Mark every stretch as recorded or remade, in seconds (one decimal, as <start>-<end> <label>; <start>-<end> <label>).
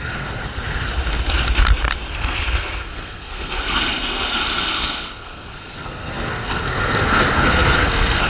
0.0-0.4 remade; 0.4-2.1 recorded; 2.1-8.3 remade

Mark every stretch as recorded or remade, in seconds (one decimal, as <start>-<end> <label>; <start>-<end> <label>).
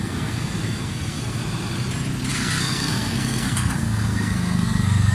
0.0-1.4 remade; 1.4-2.3 recorded; 2.3-5.1 remade